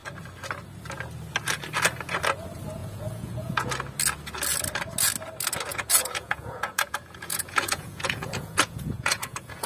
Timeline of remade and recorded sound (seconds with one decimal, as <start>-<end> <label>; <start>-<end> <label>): 0.0-2.8 recorded; 2.8-3.7 remade; 3.7-5.7 recorded; 5.7-9.7 remade